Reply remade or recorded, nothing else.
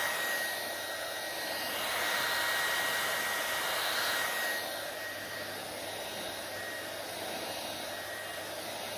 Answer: recorded